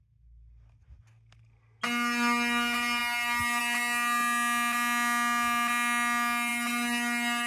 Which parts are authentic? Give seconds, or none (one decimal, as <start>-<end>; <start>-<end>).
0.0-7.5